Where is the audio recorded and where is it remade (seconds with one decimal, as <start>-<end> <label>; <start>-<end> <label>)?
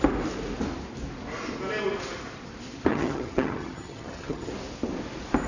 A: 0.0-2.9 recorded; 2.9-4.5 remade; 4.5-5.5 recorded